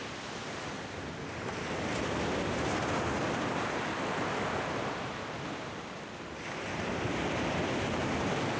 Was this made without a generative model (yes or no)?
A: yes